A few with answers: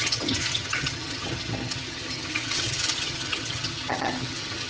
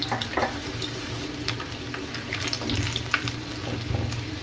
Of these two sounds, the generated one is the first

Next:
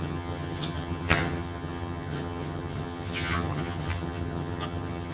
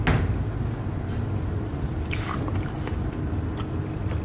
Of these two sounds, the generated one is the first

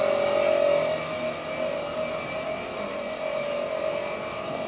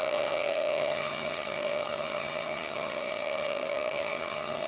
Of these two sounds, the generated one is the second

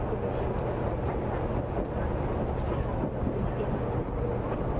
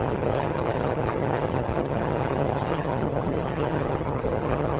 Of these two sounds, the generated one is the second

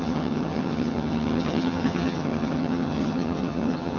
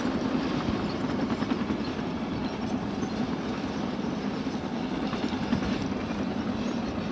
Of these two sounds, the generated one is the first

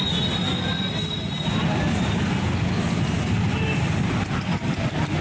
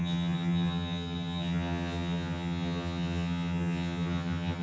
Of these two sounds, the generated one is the second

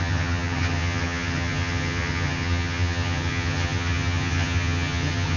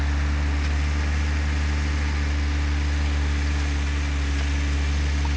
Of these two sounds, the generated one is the first